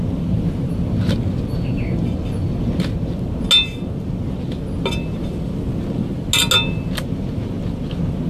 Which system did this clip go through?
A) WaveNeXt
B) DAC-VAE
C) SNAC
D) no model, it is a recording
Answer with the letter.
D